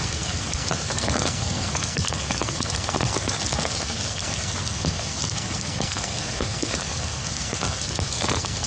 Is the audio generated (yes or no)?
yes